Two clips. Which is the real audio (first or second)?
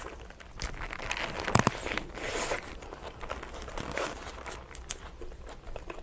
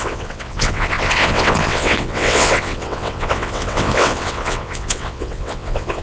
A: first